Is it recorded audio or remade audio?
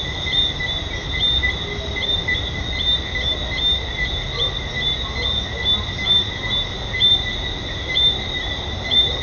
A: recorded